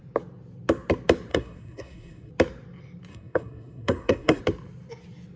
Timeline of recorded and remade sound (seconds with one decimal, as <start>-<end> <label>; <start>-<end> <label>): 0.0-1.3 recorded; 1.3-2.3 remade; 2.3-3.1 recorded; 3.1-4.4 remade; 4.4-5.4 recorded